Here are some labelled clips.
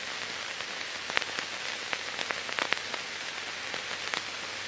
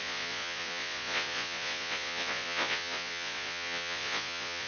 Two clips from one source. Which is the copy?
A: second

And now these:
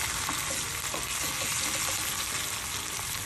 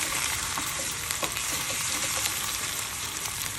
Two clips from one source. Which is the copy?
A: second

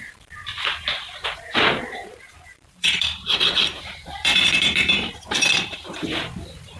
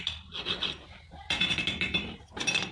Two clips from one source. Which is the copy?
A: first